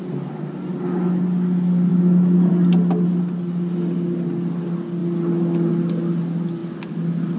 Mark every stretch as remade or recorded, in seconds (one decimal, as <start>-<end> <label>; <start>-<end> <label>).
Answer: 0.0-7.4 recorded